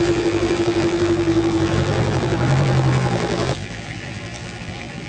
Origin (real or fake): fake